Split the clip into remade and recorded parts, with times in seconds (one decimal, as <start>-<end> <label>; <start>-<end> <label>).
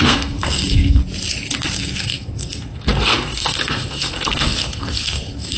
0.0-1.0 remade; 1.0-1.6 recorded; 1.6-5.6 remade